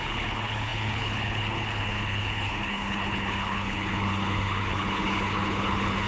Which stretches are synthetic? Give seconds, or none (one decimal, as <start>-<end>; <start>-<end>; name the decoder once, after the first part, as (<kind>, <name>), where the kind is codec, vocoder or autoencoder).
0.0-6.1 (codec, HILCodec)